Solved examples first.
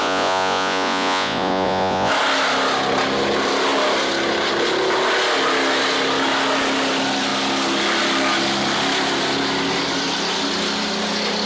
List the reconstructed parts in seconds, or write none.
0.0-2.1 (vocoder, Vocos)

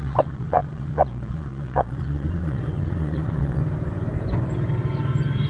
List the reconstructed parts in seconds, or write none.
0.0-3.6 (vocoder, Vocos)

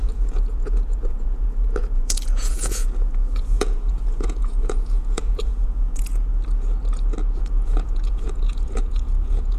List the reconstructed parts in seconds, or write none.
0.0-6.3 (vocoder, Vocos); 7.4-9.6

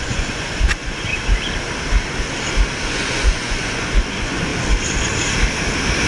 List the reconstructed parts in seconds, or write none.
0.0-1.1 (vocoder, Vocos); 2.9-4.5

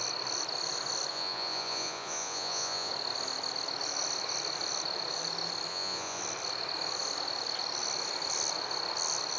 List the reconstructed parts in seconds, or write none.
1.1-2.9 (vocoder, Vocos); 5.7-6.2

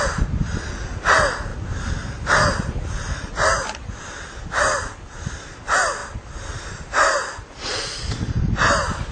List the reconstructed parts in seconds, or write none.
none

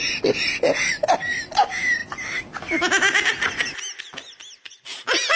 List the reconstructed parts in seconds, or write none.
none